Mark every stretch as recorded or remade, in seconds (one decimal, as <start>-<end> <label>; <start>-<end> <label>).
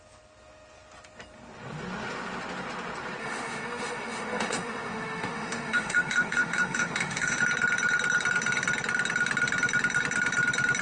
0.0-3.2 recorded; 3.2-7.4 remade; 7.4-10.8 recorded